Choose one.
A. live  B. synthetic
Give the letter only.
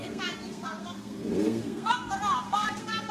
B